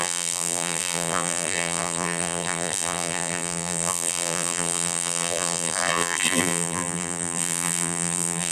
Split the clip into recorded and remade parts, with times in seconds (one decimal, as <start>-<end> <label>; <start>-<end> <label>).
0.0-8.5 remade